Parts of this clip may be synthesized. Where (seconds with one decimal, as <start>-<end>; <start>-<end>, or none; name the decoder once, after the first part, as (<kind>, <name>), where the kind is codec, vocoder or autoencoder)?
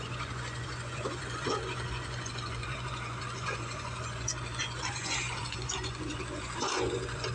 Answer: 0.0-7.3 (vocoder, Vocos)